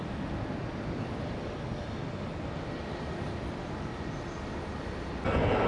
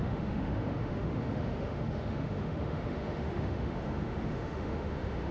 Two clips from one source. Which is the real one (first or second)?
first